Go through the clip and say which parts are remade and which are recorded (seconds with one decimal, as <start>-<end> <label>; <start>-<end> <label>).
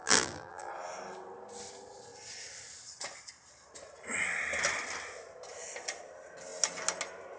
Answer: 0.0-0.7 remade; 0.7-7.4 recorded